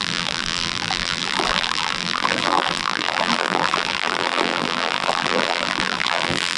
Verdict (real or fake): fake